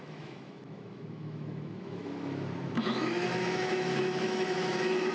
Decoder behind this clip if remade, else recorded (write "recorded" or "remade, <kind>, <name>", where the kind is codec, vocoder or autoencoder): remade, autoencoder, DAC-VAE